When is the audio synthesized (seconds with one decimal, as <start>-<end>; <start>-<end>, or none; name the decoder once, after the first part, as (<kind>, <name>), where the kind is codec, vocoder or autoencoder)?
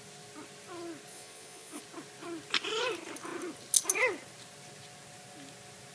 1.1-1.8 (vocoder, Vocos)